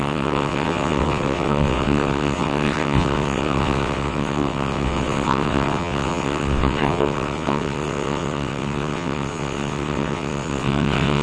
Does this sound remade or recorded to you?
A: remade